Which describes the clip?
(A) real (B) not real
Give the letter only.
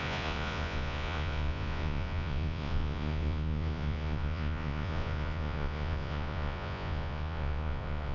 B